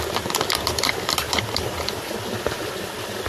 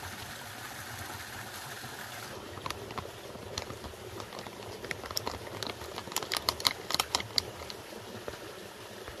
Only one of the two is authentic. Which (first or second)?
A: first